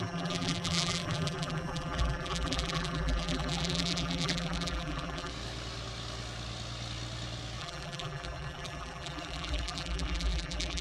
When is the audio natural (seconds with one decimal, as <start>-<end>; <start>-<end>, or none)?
5.3-7.6